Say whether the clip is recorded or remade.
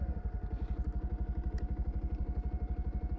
remade